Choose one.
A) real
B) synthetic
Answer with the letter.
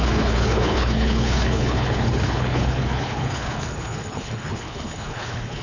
B